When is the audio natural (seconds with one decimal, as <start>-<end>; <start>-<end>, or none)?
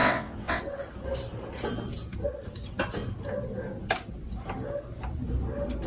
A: 0.6-5.9